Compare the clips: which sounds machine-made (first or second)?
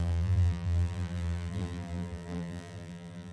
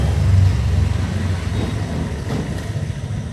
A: first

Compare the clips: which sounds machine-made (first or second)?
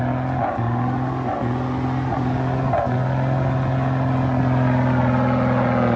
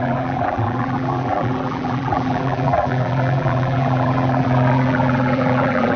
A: second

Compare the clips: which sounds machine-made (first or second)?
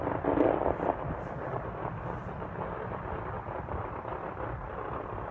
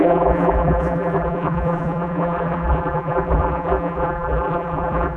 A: second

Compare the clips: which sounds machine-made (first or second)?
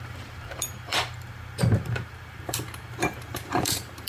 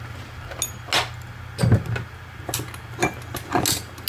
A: first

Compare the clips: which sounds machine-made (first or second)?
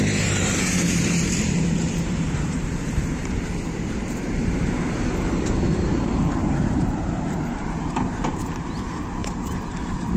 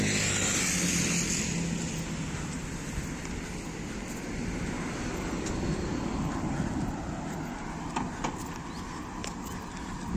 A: first